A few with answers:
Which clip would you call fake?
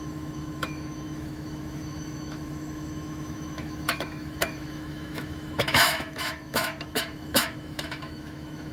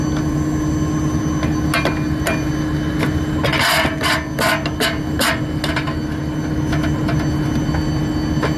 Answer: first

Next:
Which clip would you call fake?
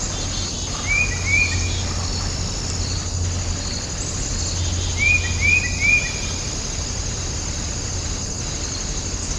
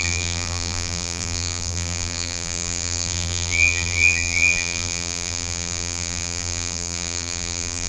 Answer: second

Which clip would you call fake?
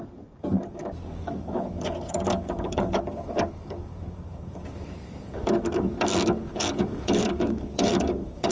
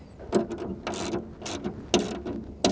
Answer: first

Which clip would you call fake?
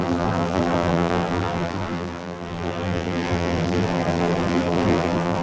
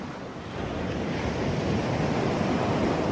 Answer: first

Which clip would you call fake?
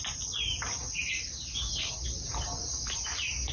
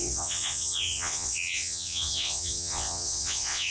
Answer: second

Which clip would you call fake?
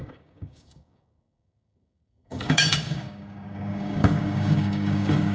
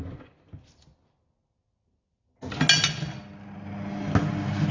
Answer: first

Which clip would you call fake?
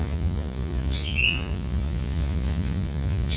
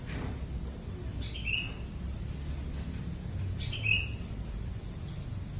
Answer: first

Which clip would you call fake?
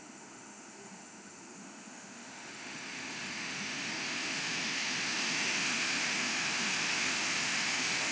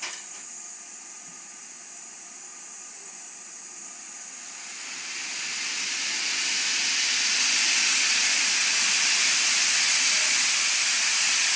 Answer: first